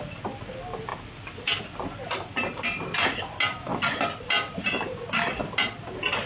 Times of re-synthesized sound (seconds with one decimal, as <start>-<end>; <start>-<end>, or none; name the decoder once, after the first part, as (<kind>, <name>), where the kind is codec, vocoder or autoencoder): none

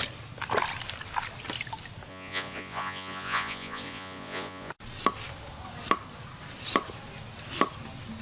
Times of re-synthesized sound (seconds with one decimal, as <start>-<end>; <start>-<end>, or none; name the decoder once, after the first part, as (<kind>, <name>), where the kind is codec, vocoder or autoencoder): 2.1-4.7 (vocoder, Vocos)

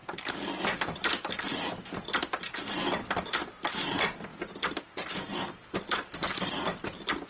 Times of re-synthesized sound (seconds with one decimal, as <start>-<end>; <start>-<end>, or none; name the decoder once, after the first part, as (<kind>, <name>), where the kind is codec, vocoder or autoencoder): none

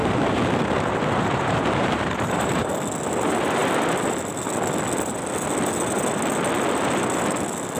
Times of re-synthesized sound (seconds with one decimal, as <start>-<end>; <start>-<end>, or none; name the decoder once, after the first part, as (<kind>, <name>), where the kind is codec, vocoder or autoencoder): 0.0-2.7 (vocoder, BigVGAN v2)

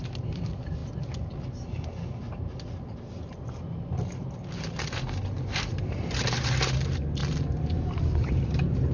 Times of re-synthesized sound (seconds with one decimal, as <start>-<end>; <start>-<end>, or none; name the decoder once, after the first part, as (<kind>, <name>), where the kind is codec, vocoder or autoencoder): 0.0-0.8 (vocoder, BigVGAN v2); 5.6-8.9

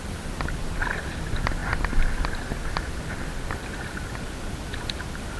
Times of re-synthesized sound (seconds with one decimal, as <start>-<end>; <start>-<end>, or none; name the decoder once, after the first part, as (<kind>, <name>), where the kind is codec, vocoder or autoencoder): 0.0-1.1 (vocoder, BigVGAN v2)